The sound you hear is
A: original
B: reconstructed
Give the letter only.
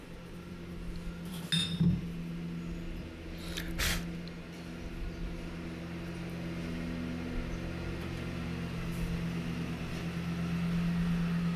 A